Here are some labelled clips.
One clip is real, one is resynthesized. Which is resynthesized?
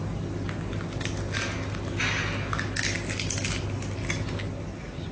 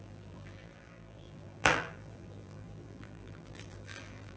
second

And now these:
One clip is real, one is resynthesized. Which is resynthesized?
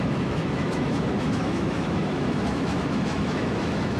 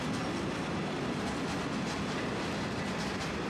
first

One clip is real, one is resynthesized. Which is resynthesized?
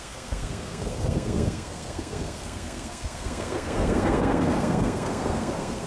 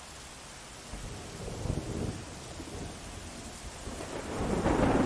first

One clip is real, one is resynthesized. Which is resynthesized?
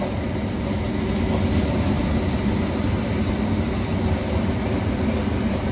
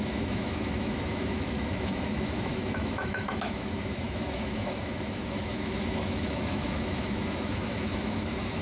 second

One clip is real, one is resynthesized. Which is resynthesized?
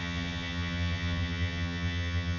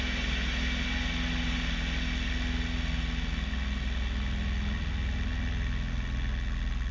first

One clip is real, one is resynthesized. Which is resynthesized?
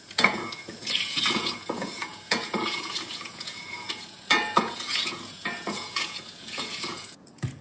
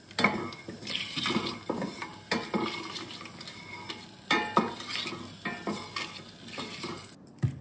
first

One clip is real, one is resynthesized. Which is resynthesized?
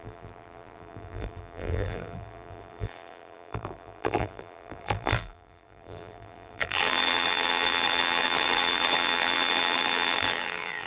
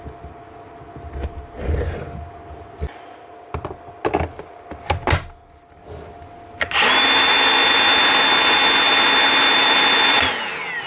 first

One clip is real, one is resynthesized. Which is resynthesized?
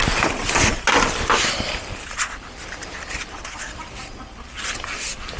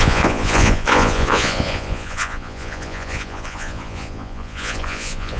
second